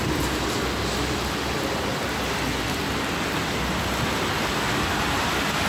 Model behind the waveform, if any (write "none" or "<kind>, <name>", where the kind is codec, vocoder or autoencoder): none